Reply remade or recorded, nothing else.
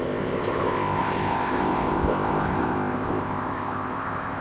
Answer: remade